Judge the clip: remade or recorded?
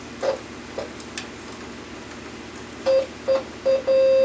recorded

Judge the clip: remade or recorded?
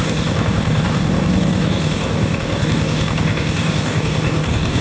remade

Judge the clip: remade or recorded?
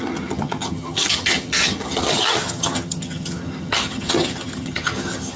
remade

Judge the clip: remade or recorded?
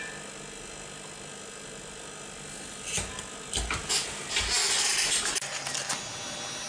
recorded